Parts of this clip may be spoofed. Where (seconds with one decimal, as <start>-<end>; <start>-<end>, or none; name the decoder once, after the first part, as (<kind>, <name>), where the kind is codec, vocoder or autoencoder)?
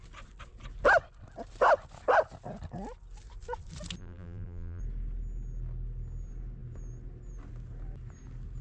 4.0-4.8 (vocoder, BigVGAN v2)